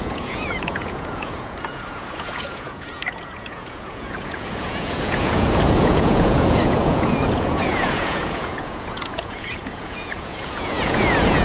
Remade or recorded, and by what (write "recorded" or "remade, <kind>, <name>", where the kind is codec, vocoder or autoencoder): remade, vocoder, Vocos